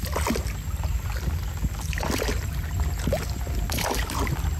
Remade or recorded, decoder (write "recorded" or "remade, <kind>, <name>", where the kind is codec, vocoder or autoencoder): recorded